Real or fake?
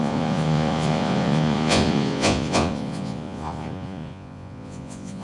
fake